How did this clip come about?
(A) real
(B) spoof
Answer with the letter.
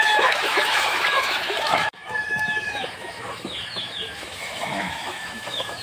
B